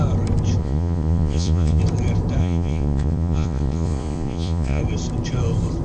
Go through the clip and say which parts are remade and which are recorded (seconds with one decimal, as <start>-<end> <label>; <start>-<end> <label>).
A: 0.0-0.6 recorded; 0.6-1.8 remade; 1.8-2.4 recorded; 2.4-4.8 remade; 4.8-5.8 recorded